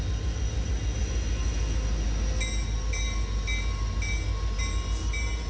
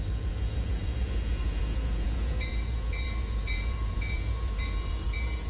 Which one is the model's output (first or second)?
second